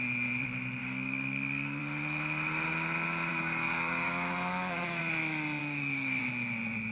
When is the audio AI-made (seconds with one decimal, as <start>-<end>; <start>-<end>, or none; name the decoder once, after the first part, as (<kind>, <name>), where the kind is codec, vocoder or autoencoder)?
0.8-1.8 (codec, DAC); 3.3-5.0; 5.6-6.2